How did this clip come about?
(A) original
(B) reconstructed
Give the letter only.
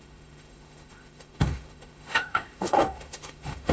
B